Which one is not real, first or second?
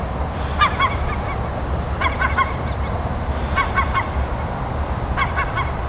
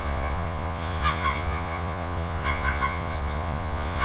second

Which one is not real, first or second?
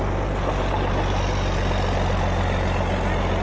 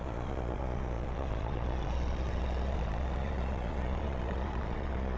second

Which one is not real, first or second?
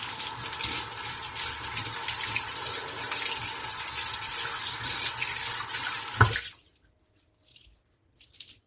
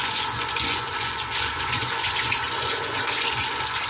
second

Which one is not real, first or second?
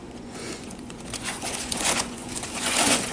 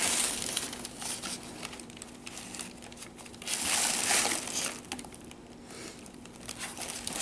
first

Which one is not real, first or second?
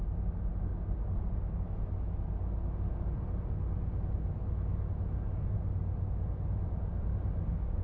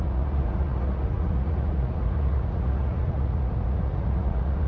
second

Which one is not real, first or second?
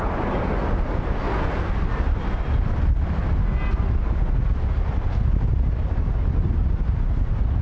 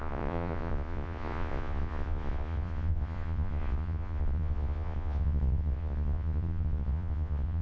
second